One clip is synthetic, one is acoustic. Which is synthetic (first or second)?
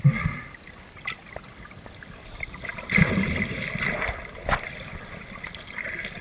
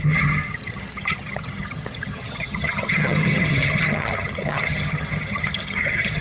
second